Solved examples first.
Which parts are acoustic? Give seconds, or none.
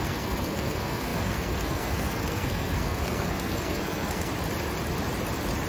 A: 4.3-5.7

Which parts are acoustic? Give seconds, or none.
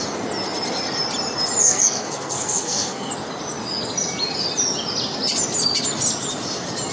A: 0.0-1.6; 3.1-6.9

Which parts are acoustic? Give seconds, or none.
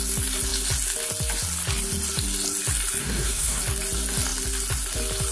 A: 0.0-3.0; 3.6-5.3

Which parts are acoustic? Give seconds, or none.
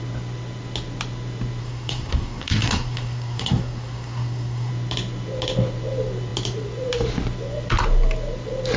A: 0.0-1.6; 4.7-8.8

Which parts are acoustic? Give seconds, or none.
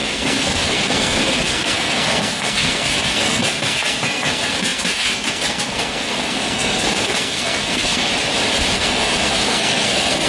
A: 8.1-8.7